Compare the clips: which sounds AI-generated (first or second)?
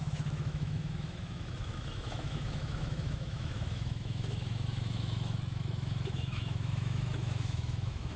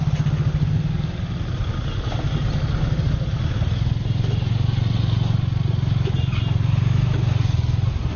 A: first